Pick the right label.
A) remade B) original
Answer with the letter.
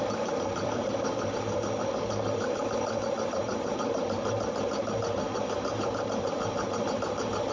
A